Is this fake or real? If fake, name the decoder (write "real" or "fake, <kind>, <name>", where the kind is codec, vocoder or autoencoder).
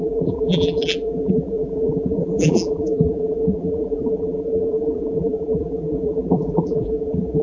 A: fake, vocoder, BigVGAN v2